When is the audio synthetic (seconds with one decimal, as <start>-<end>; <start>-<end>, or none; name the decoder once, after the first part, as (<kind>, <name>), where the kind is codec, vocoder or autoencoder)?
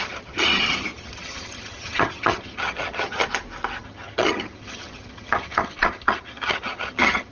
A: 0.0-3.2 (vocoder, HiFi-GAN); 3.8-7.3